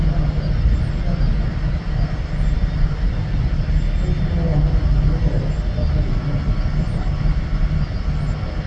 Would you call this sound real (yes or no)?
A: yes